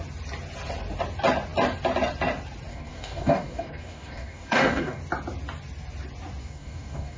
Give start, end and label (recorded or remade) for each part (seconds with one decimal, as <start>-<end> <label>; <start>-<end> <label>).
0.0-2.7 recorded; 2.7-5.0 remade; 5.0-6.4 recorded; 6.4-7.2 remade

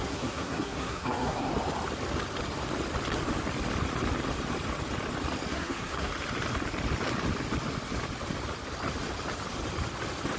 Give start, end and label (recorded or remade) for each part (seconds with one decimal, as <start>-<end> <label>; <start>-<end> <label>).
0.0-1.5 remade; 1.5-5.5 recorded; 5.5-6.1 remade; 6.1-10.4 recorded

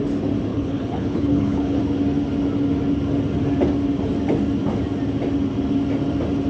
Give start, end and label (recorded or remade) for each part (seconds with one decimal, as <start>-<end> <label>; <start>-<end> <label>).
0.0-0.5 recorded; 0.5-1.8 remade; 1.8-6.5 recorded

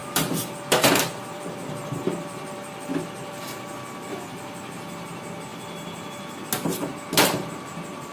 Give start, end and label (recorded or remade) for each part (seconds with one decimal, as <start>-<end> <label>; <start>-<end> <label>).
0.0-4.7 remade; 4.7-5.5 recorded; 5.5-6.4 remade; 6.4-8.1 recorded

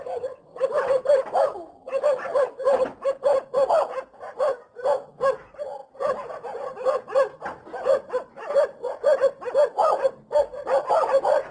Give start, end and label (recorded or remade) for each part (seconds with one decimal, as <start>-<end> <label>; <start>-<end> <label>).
0.0-4.5 recorded; 4.5-5.1 remade; 5.1-11.5 recorded

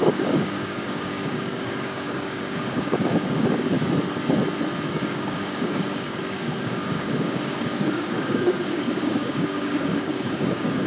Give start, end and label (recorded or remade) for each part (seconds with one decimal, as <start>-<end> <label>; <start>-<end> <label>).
0.0-3.8 remade; 3.8-4.9 recorded; 4.9-10.9 remade

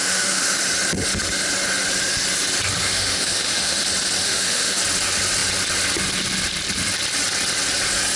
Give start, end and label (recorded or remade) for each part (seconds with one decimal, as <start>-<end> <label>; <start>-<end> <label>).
0.0-0.6 remade; 0.6-2.8 recorded; 2.8-3.8 remade; 3.8-4.2 recorded; 4.2-4.8 remade; 4.8-8.2 recorded